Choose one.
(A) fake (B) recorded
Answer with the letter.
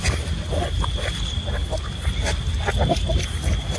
B